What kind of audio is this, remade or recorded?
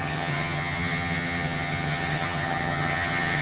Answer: remade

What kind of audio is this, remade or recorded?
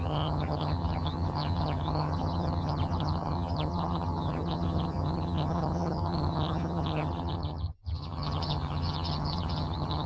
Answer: remade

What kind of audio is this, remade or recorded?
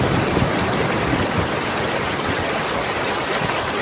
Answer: recorded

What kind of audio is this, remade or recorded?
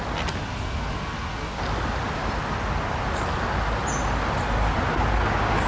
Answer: recorded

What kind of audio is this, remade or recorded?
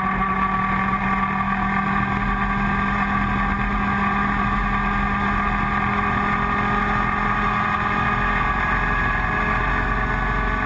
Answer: recorded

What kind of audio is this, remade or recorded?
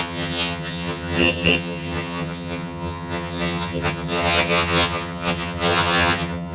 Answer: remade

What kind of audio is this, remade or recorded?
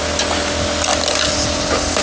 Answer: recorded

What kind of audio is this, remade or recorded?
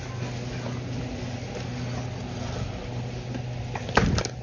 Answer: recorded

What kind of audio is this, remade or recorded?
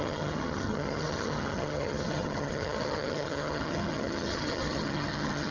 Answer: remade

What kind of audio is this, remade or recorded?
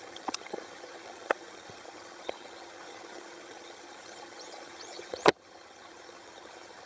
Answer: remade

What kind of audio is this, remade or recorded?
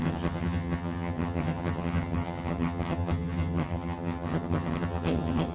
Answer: remade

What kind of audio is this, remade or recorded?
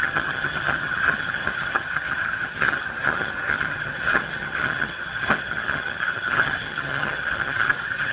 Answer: remade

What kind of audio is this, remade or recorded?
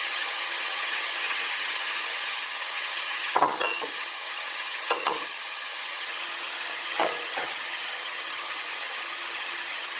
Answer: remade